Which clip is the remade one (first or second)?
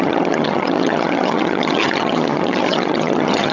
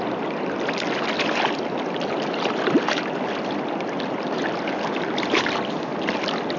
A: first